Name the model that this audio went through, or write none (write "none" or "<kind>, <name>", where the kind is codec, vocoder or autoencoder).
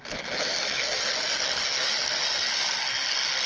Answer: none